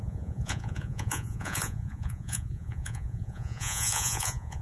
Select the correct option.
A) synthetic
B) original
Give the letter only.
A